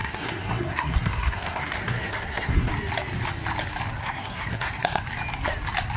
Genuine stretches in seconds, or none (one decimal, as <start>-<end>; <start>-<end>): 2.7-4.0; 5.0-6.0